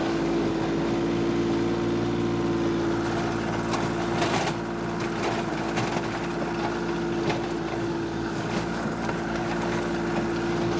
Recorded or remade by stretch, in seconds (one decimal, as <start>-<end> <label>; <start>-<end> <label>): 0.0-0.5 remade; 0.5-7.7 recorded; 7.7-9.8 remade; 9.8-10.8 recorded